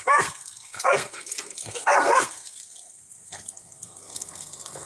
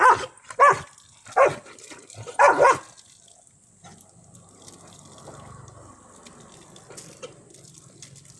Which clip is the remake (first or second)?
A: first